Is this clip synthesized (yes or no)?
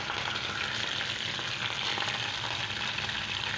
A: no